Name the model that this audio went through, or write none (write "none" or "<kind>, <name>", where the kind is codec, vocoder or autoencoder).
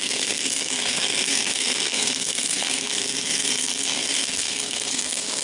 codec, SNAC